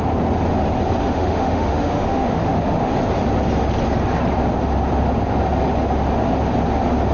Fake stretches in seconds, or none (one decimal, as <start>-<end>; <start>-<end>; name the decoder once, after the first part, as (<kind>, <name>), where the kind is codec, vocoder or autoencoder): 1.0-2.9 (autoencoder, DAC-VAE)